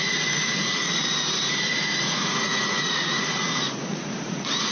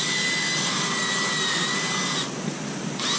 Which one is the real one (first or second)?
second